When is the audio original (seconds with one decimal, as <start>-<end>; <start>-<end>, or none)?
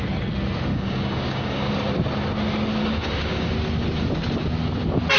0.0-0.7; 1.7-2.8; 3.5-5.2